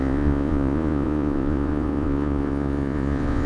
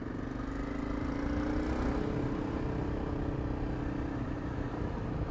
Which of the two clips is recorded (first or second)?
second